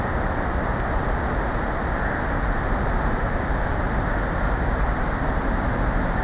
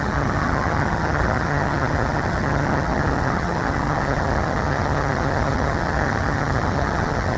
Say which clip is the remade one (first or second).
second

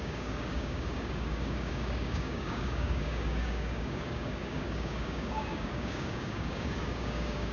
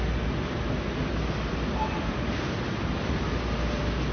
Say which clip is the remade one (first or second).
first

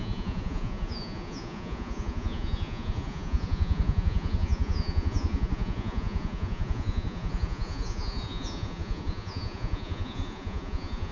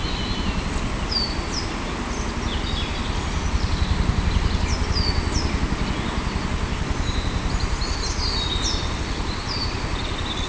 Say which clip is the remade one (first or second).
first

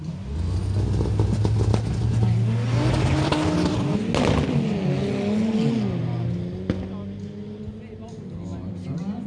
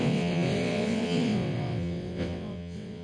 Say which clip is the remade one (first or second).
second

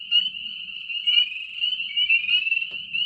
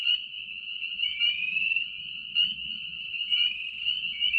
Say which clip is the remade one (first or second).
second